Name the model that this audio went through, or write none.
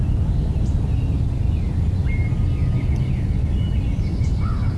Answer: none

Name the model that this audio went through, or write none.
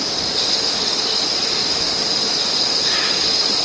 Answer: none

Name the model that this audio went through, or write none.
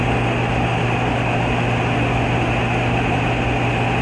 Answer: none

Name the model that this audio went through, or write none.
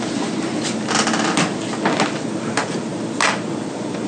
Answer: none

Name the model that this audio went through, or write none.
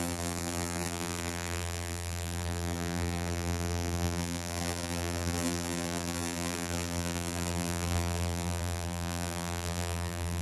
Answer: vocoder, BigVGAN v2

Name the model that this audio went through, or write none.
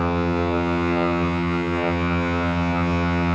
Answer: vocoder, HiFi-GAN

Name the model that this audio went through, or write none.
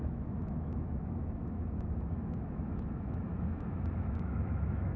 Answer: autoencoder, DAC-VAE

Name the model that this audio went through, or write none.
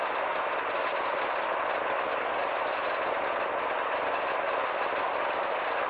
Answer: none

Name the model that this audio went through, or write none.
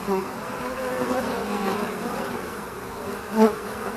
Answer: codec, SNAC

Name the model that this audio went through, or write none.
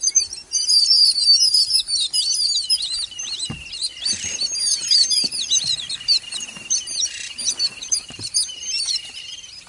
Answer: vocoder, BigVGAN v2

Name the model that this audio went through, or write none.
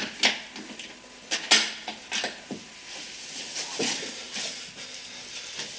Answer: none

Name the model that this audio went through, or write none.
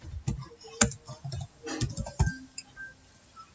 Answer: none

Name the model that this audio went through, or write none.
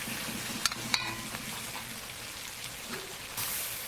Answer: none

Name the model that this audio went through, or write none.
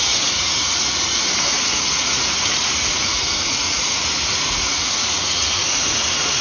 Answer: vocoder, Vocos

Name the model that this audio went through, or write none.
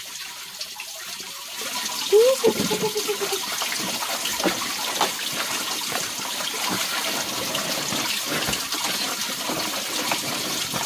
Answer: none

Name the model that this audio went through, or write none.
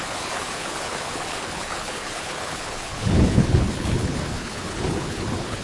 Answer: codec, HILCodec